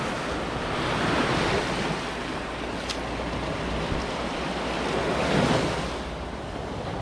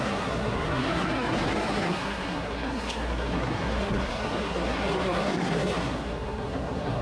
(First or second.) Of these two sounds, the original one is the first